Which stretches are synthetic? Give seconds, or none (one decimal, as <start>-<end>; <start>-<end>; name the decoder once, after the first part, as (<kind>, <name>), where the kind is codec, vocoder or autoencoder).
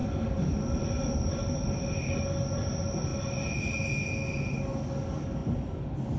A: none